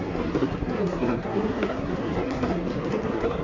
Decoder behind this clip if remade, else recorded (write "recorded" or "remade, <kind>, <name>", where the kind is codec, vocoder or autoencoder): remade, codec, SNAC